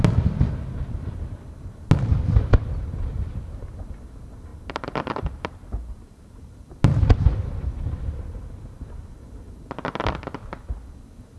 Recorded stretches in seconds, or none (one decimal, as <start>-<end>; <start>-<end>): 0.0-4.5; 6.4-11.4